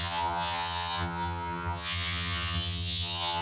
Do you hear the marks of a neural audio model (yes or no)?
yes